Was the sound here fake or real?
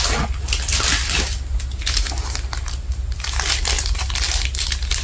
real